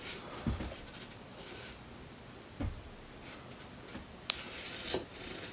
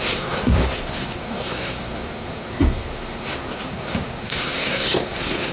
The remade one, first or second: second